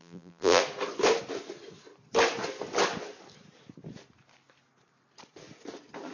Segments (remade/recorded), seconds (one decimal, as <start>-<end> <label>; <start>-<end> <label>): 0.0-0.6 remade; 0.6-6.1 recorded